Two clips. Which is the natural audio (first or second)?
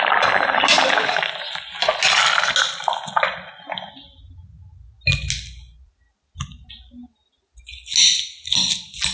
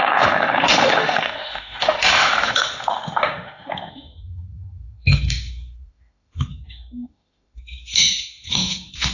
first